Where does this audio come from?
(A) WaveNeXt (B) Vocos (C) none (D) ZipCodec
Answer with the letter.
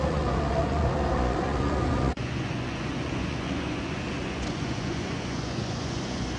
B